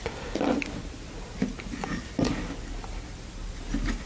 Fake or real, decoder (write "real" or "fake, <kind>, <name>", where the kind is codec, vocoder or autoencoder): real